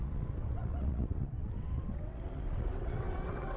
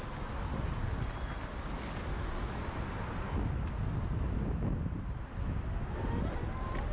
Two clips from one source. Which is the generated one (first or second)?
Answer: first